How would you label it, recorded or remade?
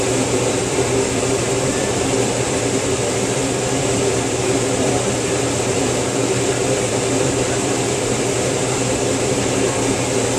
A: remade